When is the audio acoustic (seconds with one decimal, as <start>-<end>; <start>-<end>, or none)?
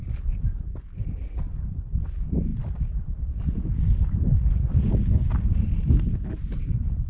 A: 0.0-7.1